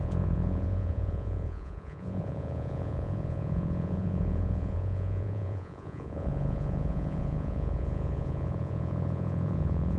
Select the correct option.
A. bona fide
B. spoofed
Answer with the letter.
B